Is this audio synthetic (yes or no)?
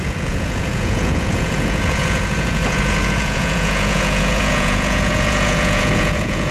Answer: yes